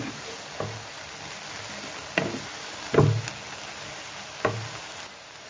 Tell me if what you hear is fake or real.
real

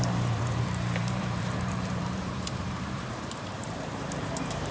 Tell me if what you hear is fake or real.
fake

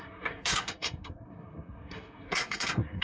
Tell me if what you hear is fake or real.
fake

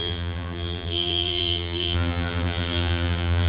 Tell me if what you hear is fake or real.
fake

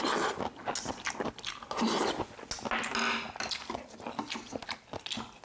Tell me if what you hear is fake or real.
real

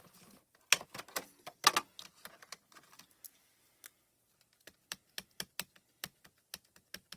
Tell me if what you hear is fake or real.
real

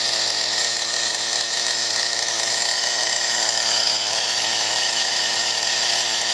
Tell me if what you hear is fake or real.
fake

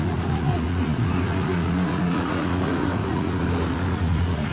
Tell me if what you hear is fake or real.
fake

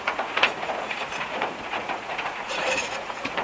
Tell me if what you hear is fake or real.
fake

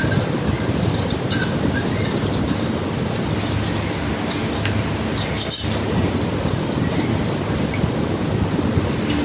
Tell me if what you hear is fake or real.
real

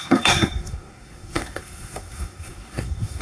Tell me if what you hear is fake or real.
fake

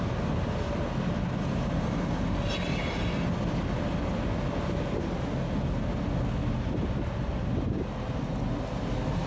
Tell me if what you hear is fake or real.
real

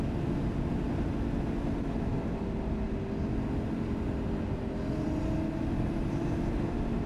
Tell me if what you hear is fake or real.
real